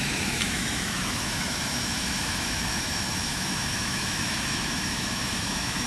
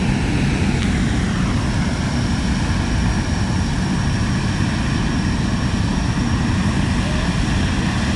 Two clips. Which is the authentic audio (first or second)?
second